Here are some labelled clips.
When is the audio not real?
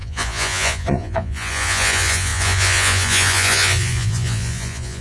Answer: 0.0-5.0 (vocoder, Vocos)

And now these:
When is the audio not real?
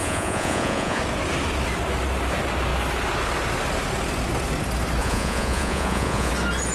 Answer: 0.0-1.0 (vocoder, Vocos); 5.0-6.3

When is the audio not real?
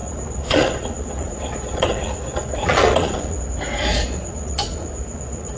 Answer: 0.0-3.4 (vocoder, Vocos); 3.9-5.6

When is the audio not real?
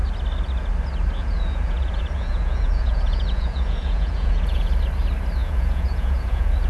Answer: 1.2-4.7 (vocoder, Vocos); 5.4-6.7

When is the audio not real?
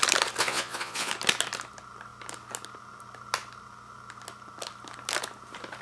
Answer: 0.4-1.1 (vocoder, Vocos)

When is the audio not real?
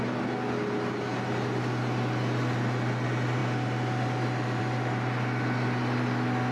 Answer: none